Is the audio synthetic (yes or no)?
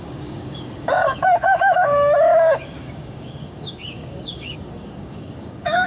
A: yes